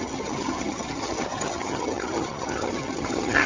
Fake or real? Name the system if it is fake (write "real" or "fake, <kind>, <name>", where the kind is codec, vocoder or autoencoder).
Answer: fake, vocoder, HiFi-GAN